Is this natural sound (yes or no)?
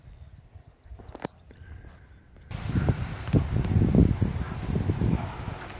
yes